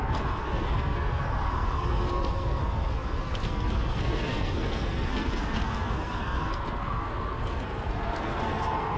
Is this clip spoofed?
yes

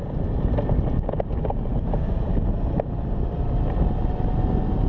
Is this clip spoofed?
no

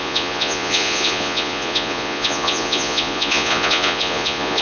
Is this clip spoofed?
yes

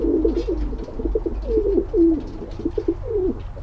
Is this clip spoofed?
no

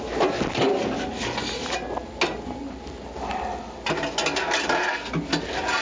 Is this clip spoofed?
no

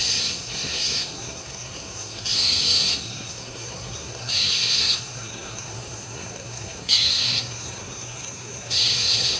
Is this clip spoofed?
yes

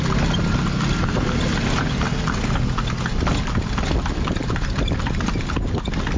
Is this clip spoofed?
no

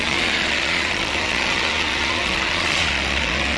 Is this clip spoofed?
yes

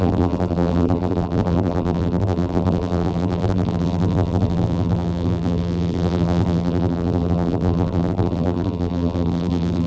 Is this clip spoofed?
yes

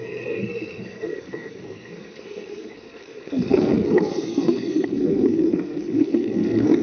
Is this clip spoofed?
yes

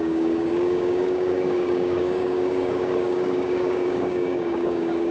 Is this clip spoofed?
yes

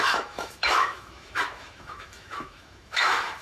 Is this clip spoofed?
yes